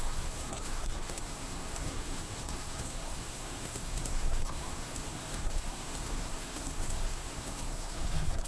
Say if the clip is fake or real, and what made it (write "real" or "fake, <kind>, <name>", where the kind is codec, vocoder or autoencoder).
fake, codec, SNAC